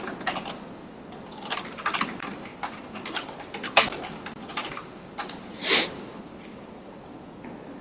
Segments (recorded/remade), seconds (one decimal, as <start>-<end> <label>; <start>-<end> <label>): 0.0-2.5 recorded; 2.5-3.4 remade; 3.4-4.5 recorded; 4.5-6.2 remade; 6.2-7.8 recorded